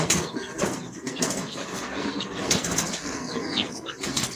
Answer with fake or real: fake